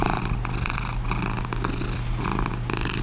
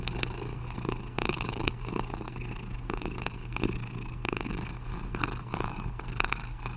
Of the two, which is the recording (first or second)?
first